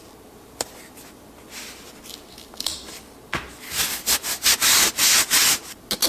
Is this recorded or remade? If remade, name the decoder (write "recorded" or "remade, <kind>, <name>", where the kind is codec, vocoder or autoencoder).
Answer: recorded